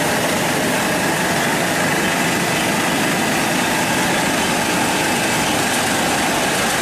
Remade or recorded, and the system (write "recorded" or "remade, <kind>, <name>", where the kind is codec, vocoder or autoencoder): recorded